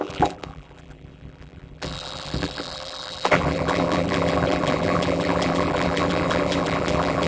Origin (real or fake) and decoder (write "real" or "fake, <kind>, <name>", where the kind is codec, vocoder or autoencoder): fake, vocoder, BigVGAN v2